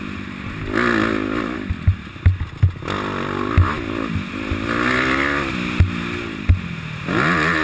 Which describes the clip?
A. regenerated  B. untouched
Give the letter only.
B